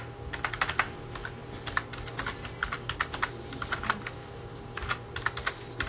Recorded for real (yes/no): yes